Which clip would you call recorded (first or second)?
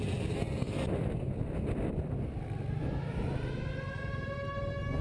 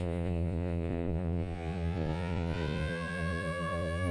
first